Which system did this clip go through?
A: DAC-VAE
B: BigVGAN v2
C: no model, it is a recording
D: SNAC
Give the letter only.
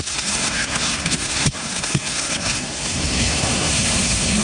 D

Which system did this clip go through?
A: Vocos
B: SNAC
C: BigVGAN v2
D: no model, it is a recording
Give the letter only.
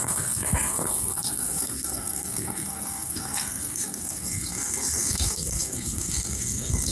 B